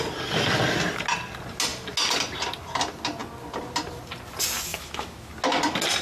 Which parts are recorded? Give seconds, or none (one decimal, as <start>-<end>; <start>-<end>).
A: 0.0-4.7; 5.3-6.0